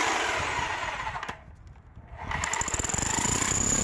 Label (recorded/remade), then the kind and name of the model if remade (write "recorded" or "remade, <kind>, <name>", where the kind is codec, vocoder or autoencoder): recorded